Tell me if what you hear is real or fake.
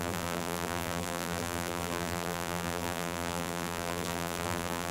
fake